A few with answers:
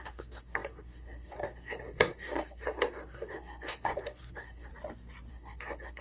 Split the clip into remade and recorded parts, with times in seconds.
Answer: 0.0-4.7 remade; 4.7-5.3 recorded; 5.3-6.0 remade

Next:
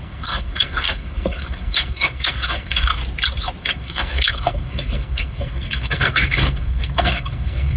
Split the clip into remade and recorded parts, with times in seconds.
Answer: 0.0-3.0 remade; 3.0-3.6 recorded; 3.6-7.8 remade

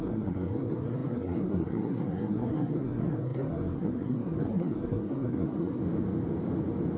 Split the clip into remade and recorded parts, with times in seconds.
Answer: 0.0-5.8 remade; 5.8-7.0 recorded

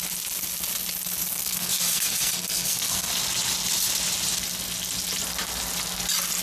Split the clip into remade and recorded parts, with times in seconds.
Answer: 0.0-1.2 recorded; 1.2-3.1 remade; 3.1-6.4 recorded